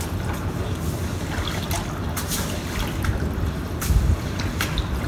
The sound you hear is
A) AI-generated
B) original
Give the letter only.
B